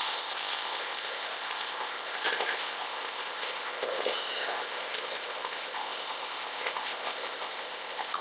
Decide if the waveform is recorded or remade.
remade